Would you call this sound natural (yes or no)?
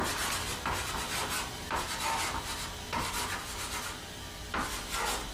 yes